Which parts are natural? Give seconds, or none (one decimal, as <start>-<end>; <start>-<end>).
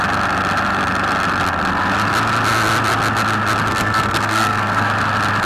0.0-3.7; 4.9-5.5